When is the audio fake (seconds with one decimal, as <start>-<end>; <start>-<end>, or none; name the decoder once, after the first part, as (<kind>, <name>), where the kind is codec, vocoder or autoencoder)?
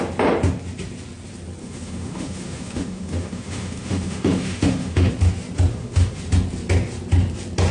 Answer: 1.6-5.1 (autoencoder, DAC-VAE); 5.7-6.2